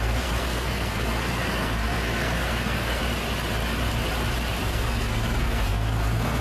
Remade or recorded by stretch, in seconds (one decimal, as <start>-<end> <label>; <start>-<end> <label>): 0.0-3.0 remade; 3.0-4.6 recorded; 4.6-6.4 remade

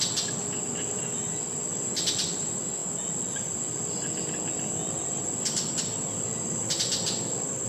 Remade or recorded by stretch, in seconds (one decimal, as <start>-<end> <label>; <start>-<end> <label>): 0.0-7.7 recorded

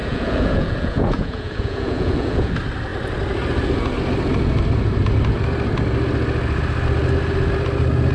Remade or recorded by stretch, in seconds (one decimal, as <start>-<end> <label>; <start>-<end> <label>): 0.0-2.5 remade; 2.5-8.1 recorded

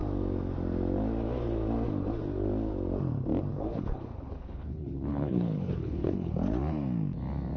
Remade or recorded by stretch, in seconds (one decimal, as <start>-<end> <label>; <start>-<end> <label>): 0.0-3.5 recorded; 3.5-6.3 remade; 6.3-7.6 recorded

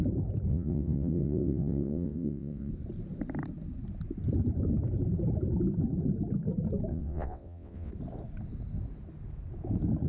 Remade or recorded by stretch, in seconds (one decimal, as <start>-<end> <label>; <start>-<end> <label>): 0.0-0.5 recorded; 0.5-2.7 remade; 2.7-6.9 recorded; 6.9-7.9 remade; 7.9-10.1 recorded

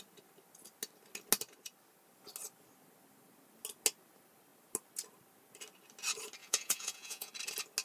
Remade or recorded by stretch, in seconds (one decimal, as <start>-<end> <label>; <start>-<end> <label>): 0.0-6.4 recorded; 6.4-7.3 remade; 7.3-7.8 recorded